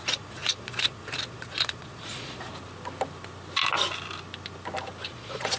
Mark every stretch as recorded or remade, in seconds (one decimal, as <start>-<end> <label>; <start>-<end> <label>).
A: 0.0-2.5 remade; 2.5-5.1 recorded; 5.1-5.6 remade